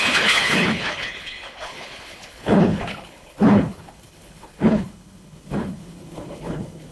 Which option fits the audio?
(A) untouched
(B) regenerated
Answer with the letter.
B